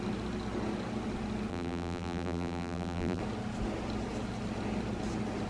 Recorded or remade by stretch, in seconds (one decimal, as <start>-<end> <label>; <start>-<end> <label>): 0.0-1.5 recorded; 1.5-3.2 remade; 3.2-5.5 recorded